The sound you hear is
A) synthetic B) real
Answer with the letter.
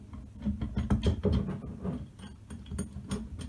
B